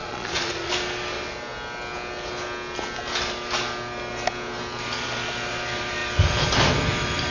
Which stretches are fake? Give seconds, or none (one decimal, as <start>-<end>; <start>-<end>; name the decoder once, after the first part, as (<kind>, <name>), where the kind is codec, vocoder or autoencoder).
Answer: 0.0-0.7 (vocoder, Vocos)